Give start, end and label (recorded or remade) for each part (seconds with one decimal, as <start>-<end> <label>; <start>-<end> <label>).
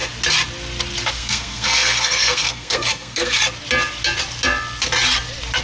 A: 0.0-1.1 recorded; 1.1-3.4 remade; 3.4-5.6 recorded